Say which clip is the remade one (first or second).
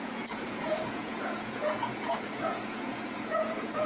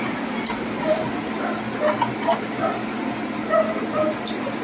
first